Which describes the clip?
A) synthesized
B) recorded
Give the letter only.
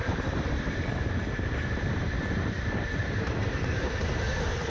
A